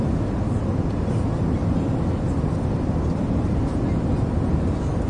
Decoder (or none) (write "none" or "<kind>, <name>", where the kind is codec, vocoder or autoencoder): none